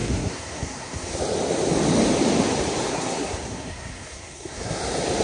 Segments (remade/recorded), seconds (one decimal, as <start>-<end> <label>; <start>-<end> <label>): 0.0-1.2 remade; 1.2-2.9 recorded; 2.9-4.8 remade; 4.8-5.2 recorded